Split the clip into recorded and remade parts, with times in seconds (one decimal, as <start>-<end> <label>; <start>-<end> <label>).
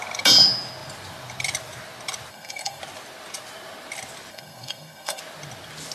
0.0-2.3 recorded; 2.3-2.8 remade; 2.8-4.3 recorded; 4.3-5.2 remade; 5.2-5.9 recorded